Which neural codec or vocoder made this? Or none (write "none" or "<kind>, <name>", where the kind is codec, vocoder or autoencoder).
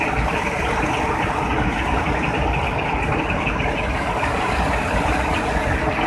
none